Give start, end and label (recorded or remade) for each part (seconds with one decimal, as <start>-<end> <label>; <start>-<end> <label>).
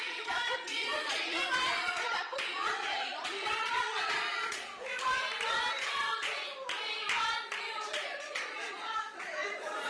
0.0-4.7 remade; 4.7-5.8 recorded; 5.8-6.5 remade; 6.5-7.7 recorded; 7.7-9.9 remade